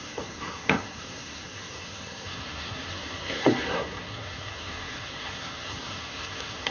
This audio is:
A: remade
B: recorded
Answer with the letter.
A